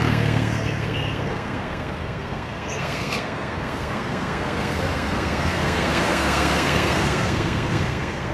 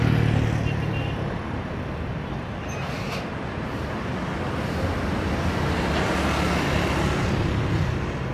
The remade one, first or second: first